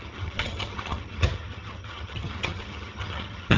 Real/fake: fake